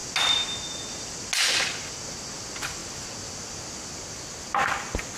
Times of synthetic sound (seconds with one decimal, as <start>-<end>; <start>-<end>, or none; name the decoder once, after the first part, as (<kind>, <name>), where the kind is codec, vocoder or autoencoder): none